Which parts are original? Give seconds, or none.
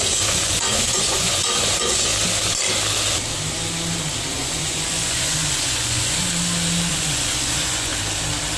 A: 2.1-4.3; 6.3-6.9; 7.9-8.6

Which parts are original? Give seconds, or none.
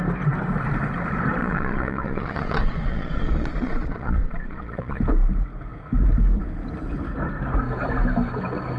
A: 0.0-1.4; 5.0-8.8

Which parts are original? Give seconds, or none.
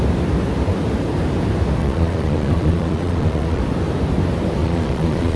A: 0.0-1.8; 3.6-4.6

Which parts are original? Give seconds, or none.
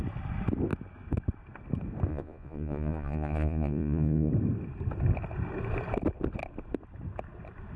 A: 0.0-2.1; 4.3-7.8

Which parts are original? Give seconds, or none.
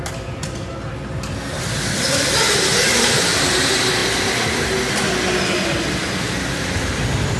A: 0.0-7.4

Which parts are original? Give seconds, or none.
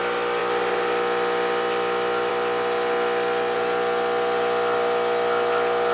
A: 0.0-5.9